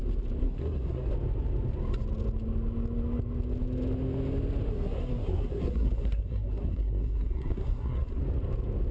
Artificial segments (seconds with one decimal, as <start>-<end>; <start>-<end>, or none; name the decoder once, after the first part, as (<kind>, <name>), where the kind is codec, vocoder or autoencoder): 0.4-1.1 (codec, SNAC); 4.7-8.2